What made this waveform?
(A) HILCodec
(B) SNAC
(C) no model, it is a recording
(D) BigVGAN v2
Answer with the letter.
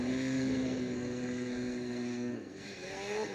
B